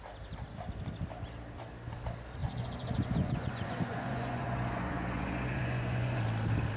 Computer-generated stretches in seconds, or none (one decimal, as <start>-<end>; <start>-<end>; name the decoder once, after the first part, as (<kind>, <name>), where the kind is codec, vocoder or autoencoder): 2.4-6.2 (vocoder, Vocos)